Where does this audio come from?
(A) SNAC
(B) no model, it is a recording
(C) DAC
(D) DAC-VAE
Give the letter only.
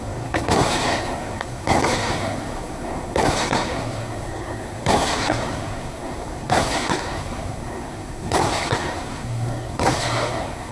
A